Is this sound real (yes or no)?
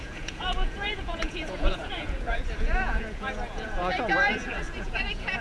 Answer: no